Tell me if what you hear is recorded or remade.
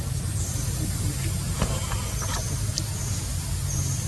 recorded